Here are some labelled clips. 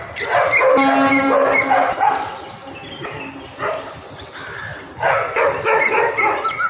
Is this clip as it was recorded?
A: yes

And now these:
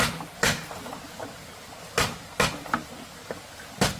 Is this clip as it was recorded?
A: yes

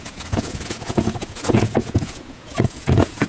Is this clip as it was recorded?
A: no